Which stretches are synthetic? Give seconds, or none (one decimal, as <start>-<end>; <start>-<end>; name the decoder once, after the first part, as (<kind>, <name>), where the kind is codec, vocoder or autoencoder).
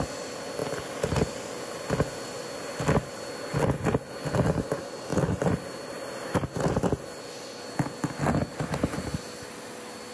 none